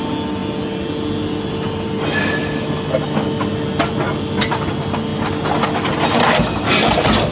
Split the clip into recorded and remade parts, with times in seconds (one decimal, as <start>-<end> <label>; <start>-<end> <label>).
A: 0.0-7.3 recorded